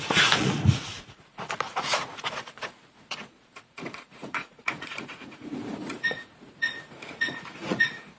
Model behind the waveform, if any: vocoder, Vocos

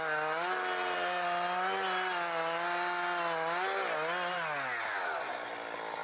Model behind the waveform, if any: none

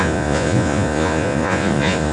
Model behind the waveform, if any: vocoder, Vocos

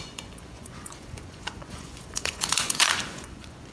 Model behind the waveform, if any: vocoder, Vocos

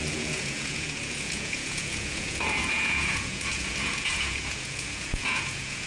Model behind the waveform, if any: vocoder, Vocos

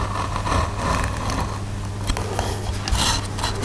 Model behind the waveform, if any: none